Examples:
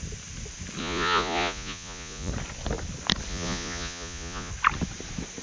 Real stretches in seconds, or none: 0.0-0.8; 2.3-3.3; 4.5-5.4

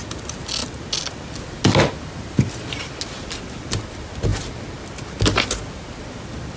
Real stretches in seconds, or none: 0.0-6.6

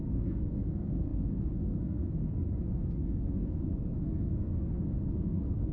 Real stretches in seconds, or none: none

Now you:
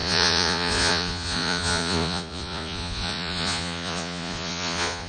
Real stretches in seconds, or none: none

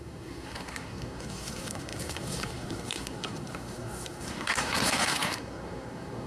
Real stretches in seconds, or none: none

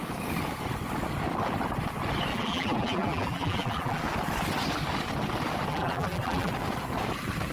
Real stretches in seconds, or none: 0.0-2.3; 4.0-5.7; 6.5-7.5